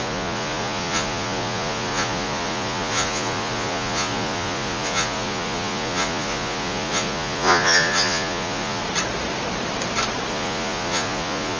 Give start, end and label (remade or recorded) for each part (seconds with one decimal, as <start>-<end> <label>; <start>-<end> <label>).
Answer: 0.0-8.8 remade; 8.8-10.3 recorded; 10.3-11.6 remade